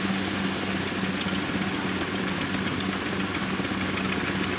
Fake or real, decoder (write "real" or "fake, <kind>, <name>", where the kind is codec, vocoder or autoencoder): real